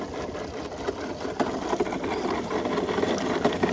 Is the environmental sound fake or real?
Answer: real